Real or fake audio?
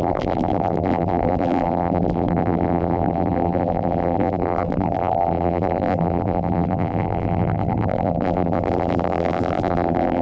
fake